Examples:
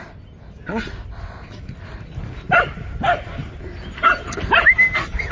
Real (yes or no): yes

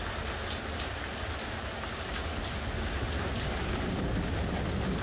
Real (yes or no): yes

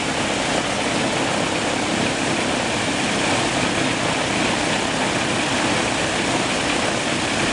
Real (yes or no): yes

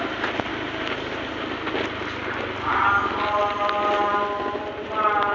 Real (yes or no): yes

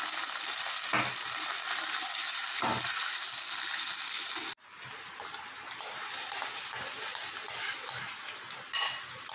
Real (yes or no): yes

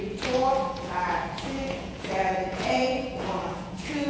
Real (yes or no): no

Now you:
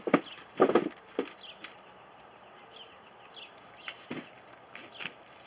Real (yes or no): yes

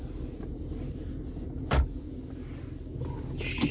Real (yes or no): yes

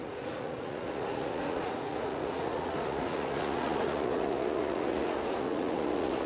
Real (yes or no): no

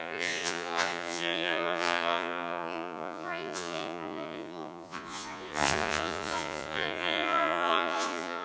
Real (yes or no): no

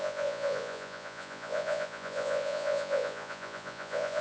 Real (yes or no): no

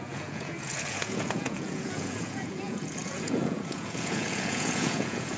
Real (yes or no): no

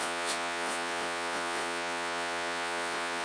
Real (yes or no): no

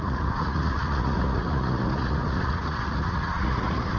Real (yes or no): no